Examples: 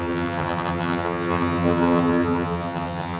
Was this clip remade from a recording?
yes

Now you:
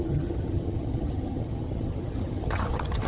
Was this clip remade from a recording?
yes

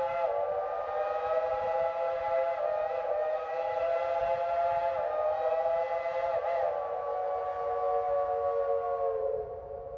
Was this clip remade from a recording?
no